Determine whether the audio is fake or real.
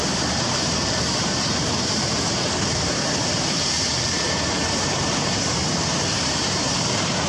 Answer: fake